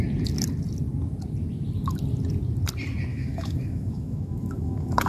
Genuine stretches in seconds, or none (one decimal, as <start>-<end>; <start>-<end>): 0.0-3.1